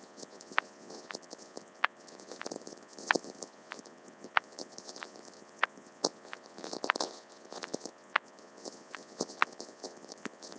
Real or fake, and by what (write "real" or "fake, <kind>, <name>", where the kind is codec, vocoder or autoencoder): fake, vocoder, Vocos